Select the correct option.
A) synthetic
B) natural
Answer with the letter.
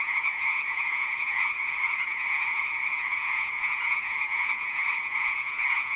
A